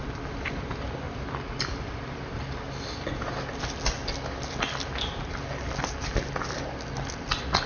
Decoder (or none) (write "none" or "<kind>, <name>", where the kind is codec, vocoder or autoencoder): none